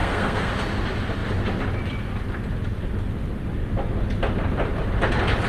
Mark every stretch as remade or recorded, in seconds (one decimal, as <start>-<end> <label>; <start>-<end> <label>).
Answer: 0.0-0.5 remade; 0.5-5.5 recorded